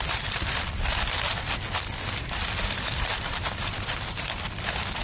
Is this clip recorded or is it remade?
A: recorded